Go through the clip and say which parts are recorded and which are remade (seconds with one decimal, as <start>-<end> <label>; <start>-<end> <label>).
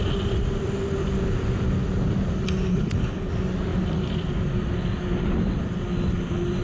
0.0-2.7 recorded; 2.7-3.3 remade; 3.3-6.6 recorded